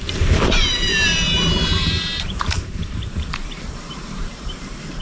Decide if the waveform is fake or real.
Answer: fake